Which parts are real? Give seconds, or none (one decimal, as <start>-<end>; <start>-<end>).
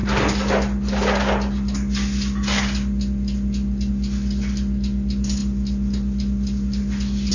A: 0.0-7.3